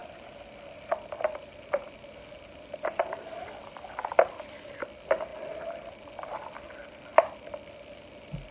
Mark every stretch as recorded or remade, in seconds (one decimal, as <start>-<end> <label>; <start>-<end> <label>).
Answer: 0.0-8.5 recorded